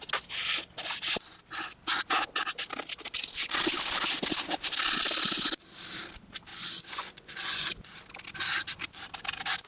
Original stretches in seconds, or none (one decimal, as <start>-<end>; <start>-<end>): 0.0-6.5; 7.7-9.7